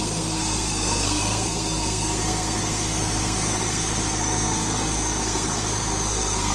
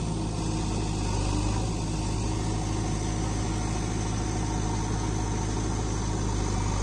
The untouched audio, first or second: second